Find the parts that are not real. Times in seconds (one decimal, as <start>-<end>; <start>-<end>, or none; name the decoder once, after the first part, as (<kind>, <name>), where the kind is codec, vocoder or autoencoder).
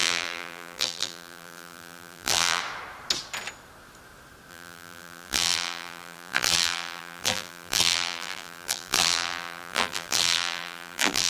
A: 0.0-2.6 (vocoder, BigVGAN v2); 4.5-11.3